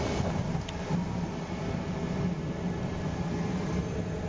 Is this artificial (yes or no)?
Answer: no